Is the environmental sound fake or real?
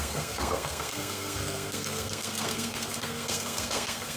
fake